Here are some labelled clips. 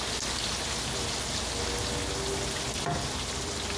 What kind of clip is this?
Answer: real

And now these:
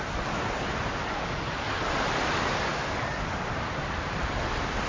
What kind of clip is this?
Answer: real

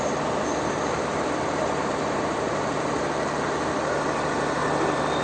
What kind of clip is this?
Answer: real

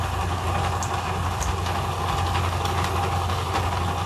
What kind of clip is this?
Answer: real